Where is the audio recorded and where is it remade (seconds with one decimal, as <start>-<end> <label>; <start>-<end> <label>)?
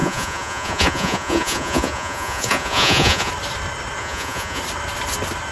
0.0-3.3 remade; 3.3-4.0 recorded; 4.0-4.6 remade; 4.6-5.5 recorded